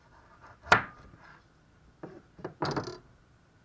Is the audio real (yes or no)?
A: yes